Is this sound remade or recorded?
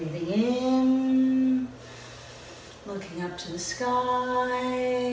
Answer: recorded